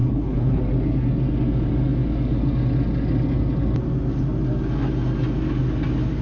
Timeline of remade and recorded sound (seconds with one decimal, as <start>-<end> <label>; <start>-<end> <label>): 0.0-0.6 remade; 0.6-6.2 recorded